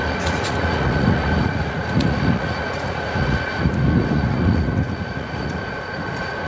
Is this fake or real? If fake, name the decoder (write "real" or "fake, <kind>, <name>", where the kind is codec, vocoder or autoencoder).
fake, vocoder, Vocos